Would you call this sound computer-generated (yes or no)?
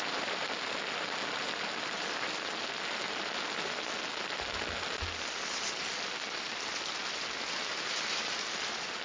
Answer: no